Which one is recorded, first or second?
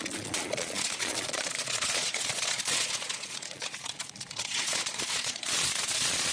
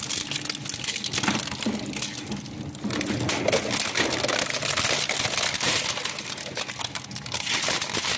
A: second